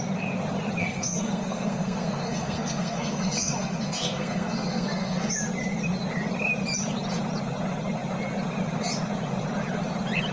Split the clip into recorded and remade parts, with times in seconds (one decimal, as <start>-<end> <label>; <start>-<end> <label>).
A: 0.0-0.8 recorded; 0.8-5.3 remade; 5.3-10.3 recorded